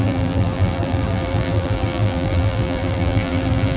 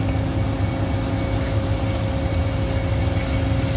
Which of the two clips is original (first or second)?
second